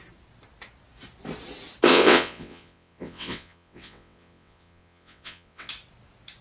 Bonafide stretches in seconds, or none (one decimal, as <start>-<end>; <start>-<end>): 0.0-1.9; 5.7-6.4